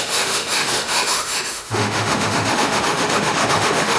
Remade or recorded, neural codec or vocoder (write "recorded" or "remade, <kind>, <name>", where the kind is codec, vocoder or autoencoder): remade, autoencoder, DAC-VAE